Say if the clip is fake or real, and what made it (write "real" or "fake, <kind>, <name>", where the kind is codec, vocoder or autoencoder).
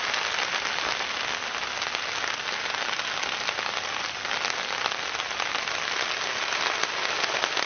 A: real